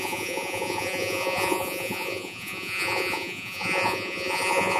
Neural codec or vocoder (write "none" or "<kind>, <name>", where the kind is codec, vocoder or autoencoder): vocoder, Vocos